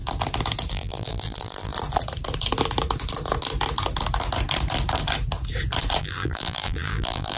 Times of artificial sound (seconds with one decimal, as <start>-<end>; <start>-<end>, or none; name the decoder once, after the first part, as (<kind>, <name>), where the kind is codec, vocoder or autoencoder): 0.7-1.7 (vocoder, BigVGAN v2); 6.0-7.4